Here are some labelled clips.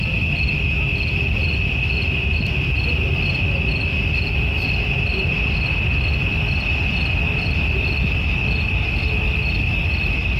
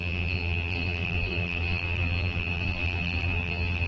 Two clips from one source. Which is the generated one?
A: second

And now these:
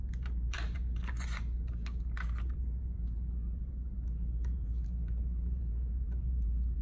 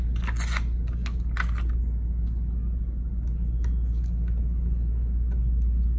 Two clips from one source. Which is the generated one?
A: first